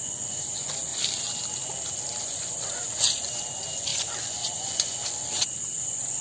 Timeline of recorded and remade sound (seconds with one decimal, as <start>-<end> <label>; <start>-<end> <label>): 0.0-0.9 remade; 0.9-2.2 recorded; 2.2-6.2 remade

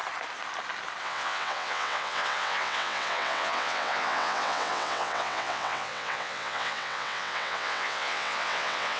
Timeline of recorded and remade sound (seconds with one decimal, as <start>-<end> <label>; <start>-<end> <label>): 0.0-1.0 recorded; 1.0-9.0 remade

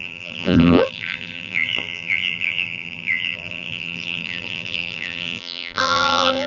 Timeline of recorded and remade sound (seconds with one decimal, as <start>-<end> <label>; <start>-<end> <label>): 0.0-6.5 remade